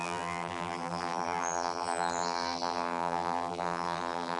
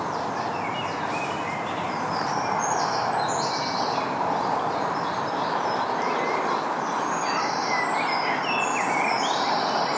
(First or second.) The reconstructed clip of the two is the first